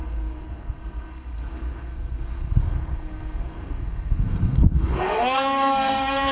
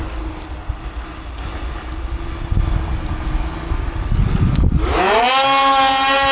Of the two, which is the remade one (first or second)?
first